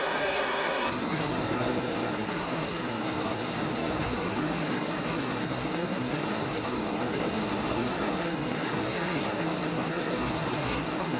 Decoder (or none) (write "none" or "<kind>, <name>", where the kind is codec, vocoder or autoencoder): codec, SNAC